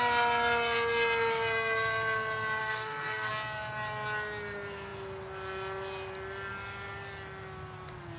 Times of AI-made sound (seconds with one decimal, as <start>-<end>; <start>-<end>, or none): 2.6-3.3